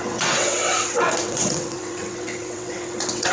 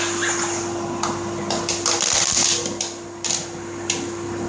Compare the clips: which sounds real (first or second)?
second